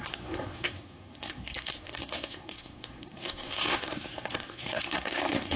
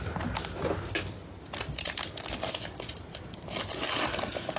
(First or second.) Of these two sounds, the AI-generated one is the first